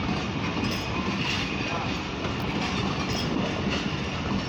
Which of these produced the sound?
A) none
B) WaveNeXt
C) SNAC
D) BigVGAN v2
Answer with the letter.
A